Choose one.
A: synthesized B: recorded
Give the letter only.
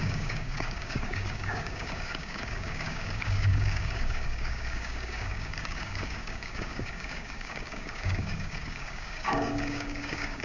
A